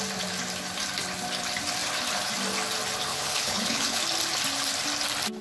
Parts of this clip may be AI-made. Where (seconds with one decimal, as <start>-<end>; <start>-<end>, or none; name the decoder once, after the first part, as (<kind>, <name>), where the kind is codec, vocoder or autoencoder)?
3.1-4.0 (codec, HILCodec)